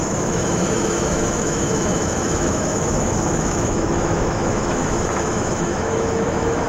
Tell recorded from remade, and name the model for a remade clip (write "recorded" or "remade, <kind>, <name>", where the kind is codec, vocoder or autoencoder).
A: remade, autoencoder, DAC-VAE